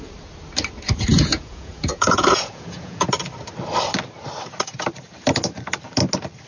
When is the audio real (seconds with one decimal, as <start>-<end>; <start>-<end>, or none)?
0.0-1.1; 3.1-6.5